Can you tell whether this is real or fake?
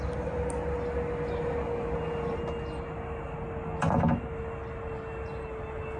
real